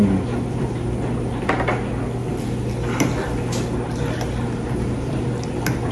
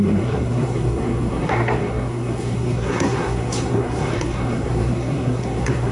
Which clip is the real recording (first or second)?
first